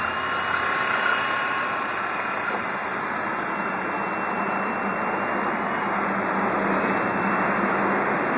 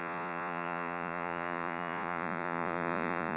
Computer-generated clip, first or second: second